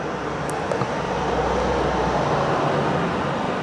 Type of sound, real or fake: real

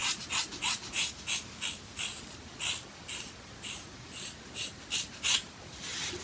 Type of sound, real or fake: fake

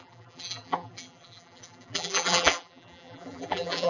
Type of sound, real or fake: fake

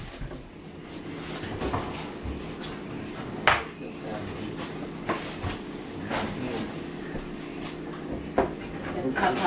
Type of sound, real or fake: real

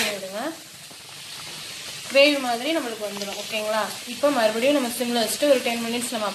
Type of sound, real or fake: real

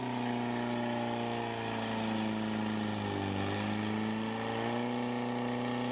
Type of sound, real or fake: real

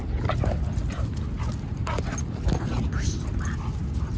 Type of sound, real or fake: real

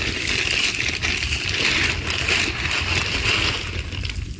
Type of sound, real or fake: fake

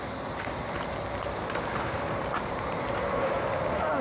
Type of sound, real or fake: real